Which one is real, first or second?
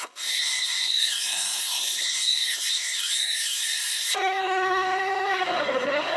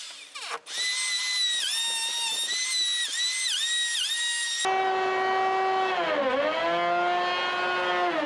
second